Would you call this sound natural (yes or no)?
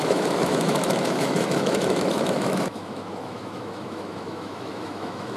no